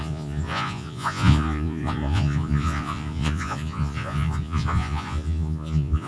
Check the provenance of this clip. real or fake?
fake